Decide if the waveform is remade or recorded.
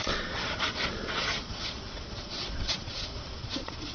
remade